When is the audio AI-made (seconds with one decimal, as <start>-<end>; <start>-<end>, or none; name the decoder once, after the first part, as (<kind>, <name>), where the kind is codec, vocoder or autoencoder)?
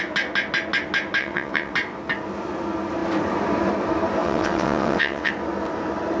1.2-1.7 (vocoder, WaveNeXt); 4.2-5.3